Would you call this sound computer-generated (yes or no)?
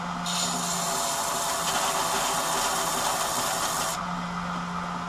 no